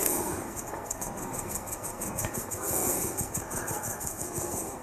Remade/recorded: remade